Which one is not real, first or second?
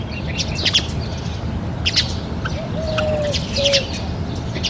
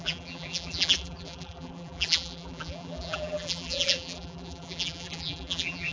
second